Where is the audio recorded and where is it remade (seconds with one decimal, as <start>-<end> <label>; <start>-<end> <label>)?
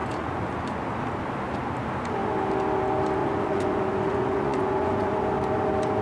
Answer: 0.0-0.8 remade; 0.8-3.2 recorded; 3.2-5.1 remade; 5.1-6.0 recorded